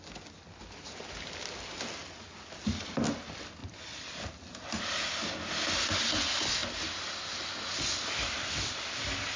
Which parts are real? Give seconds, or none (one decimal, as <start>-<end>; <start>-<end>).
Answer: 0.0-3.6; 5.4-9.4

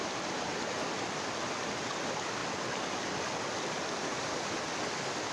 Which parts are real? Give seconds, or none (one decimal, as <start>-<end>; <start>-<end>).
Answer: 0.0-5.3

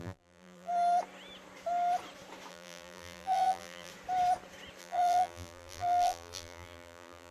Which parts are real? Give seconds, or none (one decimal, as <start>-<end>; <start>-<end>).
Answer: 0.7-2.5; 3.9-4.8

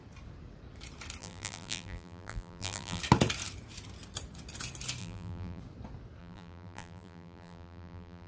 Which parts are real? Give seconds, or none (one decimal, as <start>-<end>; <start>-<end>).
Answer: 0.0-1.2; 3.0-5.0; 5.6-6.2

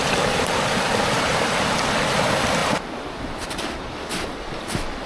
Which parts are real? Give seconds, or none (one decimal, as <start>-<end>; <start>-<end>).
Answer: 1.3-2.6

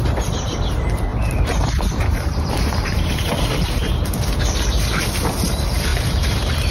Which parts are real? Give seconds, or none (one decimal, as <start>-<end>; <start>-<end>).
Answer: none